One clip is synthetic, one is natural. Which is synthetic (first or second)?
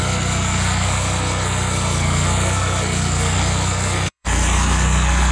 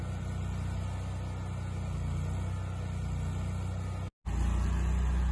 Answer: first